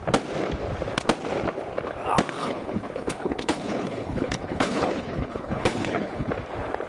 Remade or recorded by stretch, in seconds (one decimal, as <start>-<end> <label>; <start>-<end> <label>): 0.0-2.4 recorded; 2.4-6.3 remade; 6.3-6.9 recorded